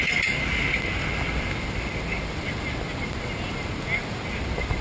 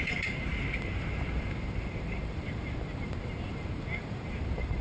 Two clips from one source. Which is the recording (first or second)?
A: first